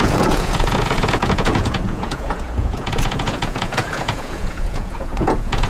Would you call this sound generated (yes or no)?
yes